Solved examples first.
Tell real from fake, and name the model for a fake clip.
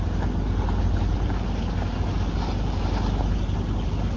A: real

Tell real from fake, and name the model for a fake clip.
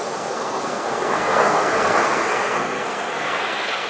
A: fake, codec, SNAC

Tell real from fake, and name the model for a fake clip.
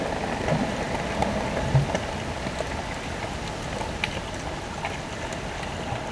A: real